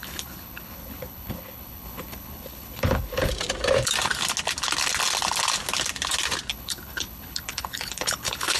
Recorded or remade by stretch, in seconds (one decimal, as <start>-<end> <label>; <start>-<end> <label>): 0.0-3.3 remade; 3.3-6.5 recorded; 6.5-8.6 remade